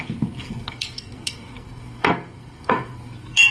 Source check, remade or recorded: remade